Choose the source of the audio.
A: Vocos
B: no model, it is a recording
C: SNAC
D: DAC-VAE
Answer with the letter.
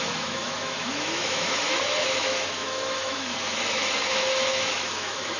D